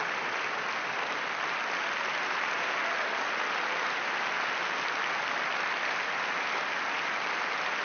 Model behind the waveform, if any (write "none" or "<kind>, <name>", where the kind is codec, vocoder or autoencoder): none